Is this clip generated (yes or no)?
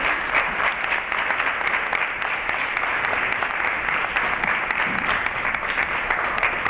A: no